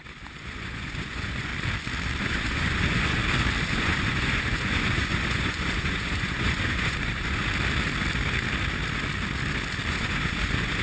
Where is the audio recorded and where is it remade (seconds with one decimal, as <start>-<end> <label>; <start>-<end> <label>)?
0.0-1.5 remade; 1.5-2.2 recorded; 2.2-3.2 remade; 3.2-3.7 recorded; 3.7-7.4 remade; 7.4-9.9 recorded; 9.9-10.8 remade